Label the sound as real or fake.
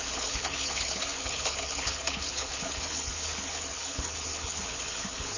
fake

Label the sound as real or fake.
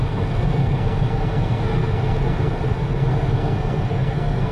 fake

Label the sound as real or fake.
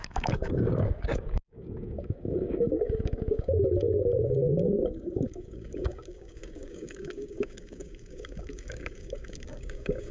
fake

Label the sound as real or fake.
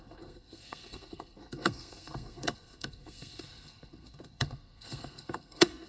fake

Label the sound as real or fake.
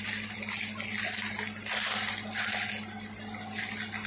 real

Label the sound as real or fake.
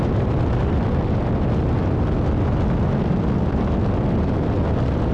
real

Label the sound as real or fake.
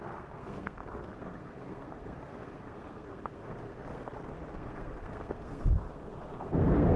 fake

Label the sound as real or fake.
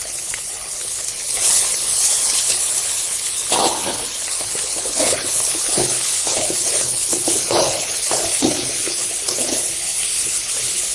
fake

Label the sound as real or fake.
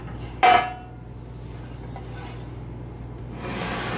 real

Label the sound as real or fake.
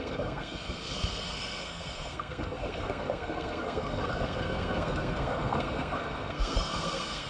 fake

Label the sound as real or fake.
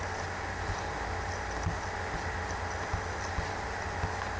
real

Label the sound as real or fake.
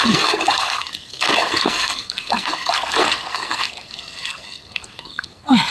fake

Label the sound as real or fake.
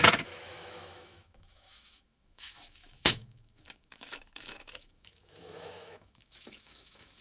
fake